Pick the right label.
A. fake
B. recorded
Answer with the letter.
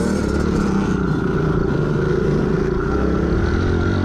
B